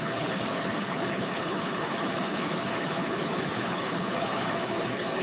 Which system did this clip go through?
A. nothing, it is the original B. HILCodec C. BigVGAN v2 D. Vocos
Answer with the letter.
B